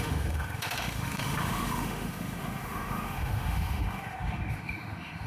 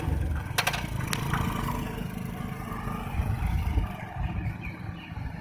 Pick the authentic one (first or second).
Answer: second